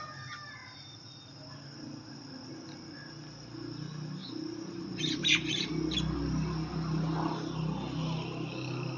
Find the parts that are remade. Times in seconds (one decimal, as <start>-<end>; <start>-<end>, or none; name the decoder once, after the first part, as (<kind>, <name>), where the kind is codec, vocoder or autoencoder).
4.2-5.7 (vocoder, BigVGAN v2)